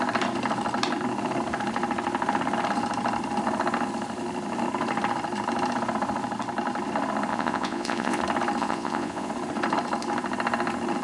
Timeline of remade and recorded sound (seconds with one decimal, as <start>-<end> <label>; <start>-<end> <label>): 0.0-7.3 recorded; 7.3-8.2 remade; 8.2-8.6 recorded; 8.6-9.3 remade; 9.3-11.0 recorded